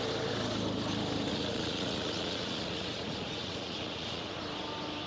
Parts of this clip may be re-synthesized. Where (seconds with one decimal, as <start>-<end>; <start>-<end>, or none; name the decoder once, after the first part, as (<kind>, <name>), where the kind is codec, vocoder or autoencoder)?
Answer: 1.3-4.4 (vocoder, Vocos)